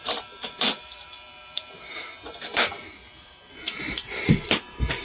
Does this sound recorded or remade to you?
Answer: remade